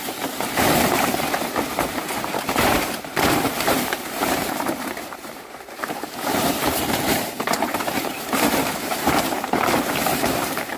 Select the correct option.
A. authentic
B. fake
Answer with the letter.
B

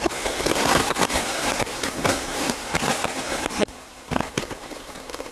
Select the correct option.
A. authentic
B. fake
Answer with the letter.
B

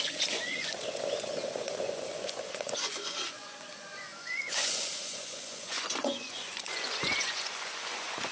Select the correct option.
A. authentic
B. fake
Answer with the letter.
B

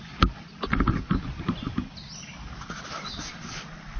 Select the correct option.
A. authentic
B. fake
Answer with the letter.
A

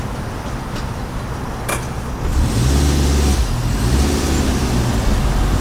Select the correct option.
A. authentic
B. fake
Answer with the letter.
A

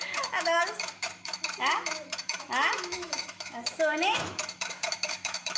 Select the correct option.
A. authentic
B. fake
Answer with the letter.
B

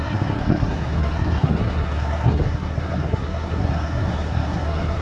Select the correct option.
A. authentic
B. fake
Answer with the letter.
B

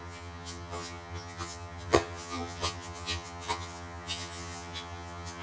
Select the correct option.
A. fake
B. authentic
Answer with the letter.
A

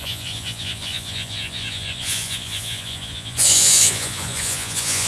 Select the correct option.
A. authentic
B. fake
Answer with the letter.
B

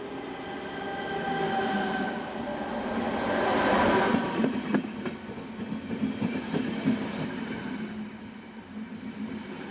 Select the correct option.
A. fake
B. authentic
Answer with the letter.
B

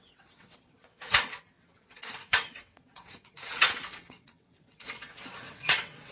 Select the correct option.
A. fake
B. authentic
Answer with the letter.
A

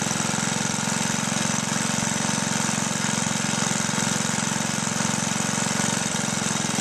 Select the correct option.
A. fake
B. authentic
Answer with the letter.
B